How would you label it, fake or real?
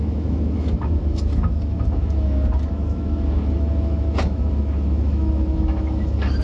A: fake